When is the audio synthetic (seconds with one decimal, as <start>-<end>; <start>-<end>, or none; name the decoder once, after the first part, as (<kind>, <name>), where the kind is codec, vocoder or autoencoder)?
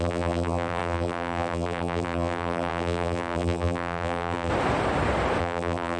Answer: 0.0-4.5 (vocoder, BigVGAN v2); 5.4-6.0